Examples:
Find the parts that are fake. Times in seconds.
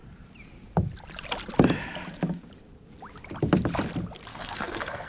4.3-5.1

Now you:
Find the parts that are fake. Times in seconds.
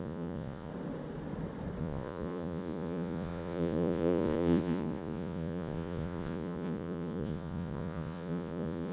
0.0-0.7; 1.8-8.9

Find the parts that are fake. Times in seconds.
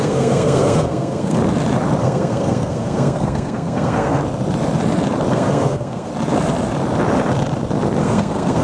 0.0-1.4; 2.0-4.2; 5.3-6.1; 8.0-8.6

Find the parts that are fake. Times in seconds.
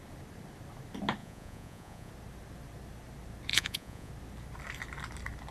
1.2-2.1; 3.5-4.1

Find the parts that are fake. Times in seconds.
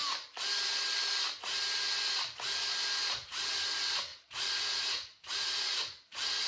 3.1-6.5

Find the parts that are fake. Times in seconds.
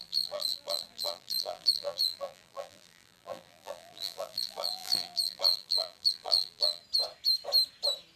0.0-6.8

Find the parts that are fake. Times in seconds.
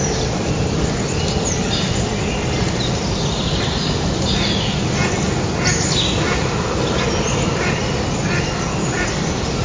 none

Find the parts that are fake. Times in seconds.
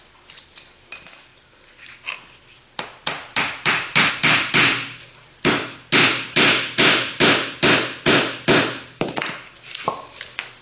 none